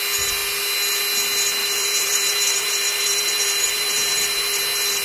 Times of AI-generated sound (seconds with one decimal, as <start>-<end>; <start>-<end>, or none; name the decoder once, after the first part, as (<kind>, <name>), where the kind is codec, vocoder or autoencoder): 1.6-4.6 (vocoder, BigVGAN v2)